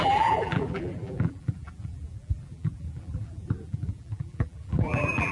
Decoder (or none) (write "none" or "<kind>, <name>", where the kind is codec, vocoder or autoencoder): vocoder, BigVGAN v2